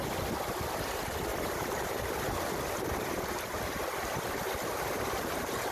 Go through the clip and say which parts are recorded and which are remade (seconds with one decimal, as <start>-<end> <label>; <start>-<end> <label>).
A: 0.0-1.3 recorded; 1.3-3.3 remade; 3.3-5.7 recorded